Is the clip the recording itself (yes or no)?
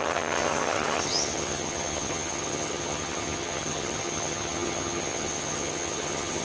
no